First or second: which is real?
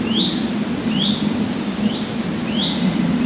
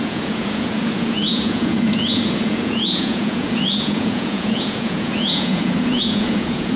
first